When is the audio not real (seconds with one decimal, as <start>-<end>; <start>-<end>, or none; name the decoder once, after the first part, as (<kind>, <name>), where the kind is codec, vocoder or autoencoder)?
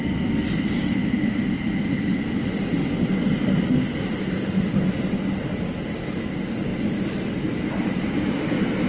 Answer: none